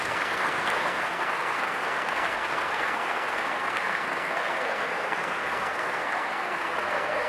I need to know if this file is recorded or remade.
remade